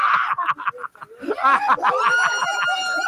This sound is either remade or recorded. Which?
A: recorded